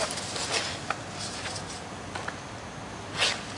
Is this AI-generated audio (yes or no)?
no